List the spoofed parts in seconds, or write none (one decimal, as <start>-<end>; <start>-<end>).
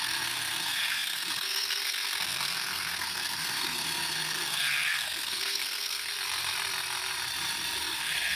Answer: 0.0-6.1; 7.8-8.4